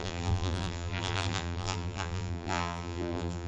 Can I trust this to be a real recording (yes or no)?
no